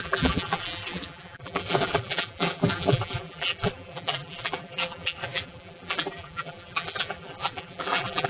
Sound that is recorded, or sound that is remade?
remade